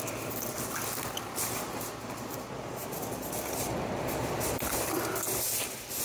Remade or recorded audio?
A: recorded